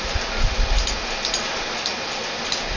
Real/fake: real